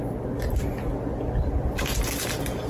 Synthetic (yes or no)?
no